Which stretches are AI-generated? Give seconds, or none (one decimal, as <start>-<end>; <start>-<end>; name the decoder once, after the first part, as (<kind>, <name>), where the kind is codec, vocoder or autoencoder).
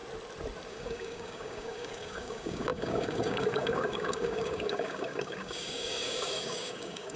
0.7-7.2 (codec, DAC)